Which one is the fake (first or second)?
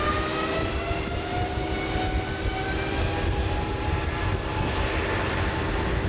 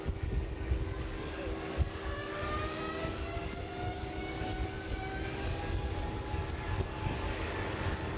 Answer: second